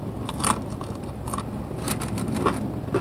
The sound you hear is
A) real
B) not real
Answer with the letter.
A